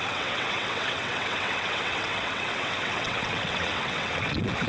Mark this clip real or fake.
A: fake